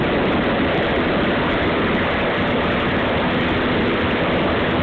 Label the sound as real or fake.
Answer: real